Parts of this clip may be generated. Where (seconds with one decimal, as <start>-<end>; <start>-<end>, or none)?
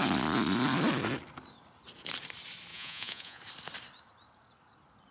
2.7-3.4